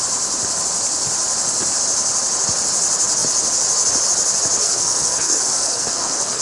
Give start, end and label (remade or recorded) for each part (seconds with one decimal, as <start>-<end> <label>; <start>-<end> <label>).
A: 0.0-4.6 recorded; 4.6-6.4 remade